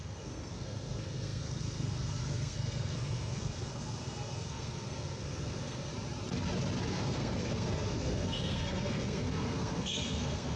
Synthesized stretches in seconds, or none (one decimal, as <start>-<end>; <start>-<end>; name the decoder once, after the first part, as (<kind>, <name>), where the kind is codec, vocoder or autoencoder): 0.0-5.9 (codec, SNAC); 6.9-10.6